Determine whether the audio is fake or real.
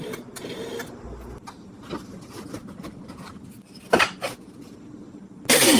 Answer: real